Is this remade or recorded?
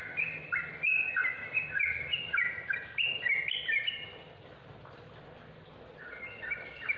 recorded